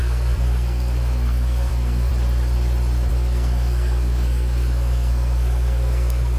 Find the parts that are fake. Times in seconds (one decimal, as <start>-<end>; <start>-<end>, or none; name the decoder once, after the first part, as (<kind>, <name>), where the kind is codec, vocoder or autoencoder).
0.0-2.1 (codec, SNAC); 3.1-6.4